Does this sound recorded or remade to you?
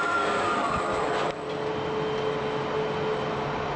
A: recorded